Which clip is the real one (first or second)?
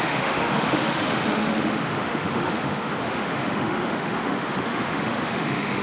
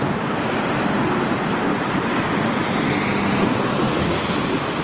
second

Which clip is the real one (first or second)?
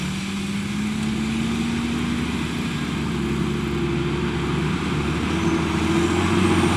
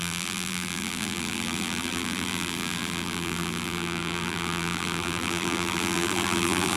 first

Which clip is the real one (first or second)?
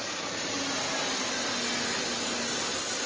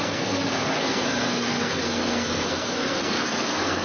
first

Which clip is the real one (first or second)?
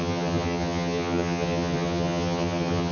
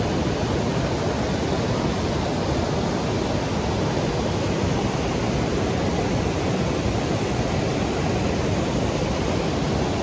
second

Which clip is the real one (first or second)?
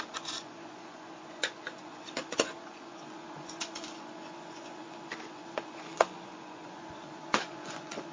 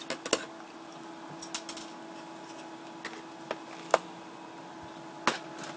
second